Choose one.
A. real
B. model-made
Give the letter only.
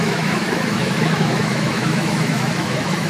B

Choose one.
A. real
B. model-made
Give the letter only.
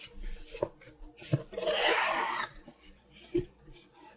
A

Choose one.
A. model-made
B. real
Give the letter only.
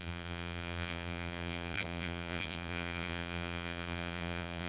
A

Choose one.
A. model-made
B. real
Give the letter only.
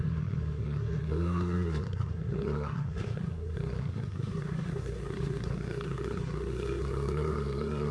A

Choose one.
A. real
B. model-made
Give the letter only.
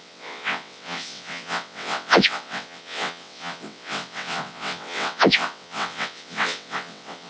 B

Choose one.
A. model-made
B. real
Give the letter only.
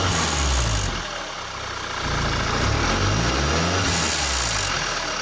B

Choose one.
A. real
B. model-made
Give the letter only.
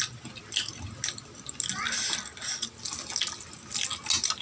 A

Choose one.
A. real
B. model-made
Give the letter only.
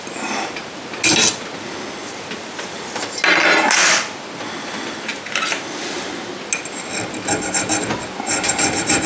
A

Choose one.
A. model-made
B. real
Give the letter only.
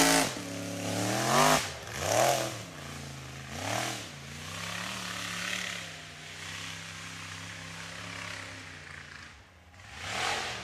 B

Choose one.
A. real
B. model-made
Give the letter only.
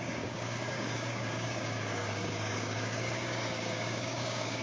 B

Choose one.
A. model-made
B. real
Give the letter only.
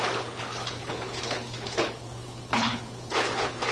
A